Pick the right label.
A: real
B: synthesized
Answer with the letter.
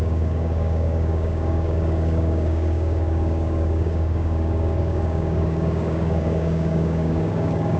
B